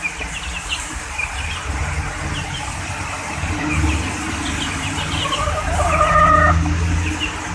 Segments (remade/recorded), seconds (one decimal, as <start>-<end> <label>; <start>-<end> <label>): 0.0-7.5 recorded